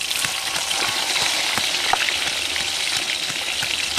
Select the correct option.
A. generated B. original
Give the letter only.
A